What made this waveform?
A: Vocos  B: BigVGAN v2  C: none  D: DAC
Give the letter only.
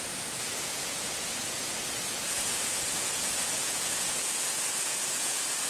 A